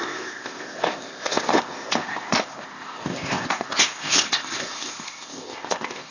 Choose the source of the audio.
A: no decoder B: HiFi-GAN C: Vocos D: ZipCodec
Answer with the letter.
D